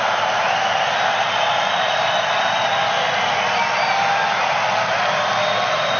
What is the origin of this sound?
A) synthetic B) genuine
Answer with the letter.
B